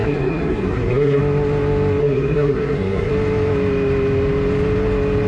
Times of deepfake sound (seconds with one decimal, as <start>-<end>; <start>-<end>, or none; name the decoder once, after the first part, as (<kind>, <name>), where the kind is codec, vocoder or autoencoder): 0.0-1.2 (codec, SNAC); 2.0-3.1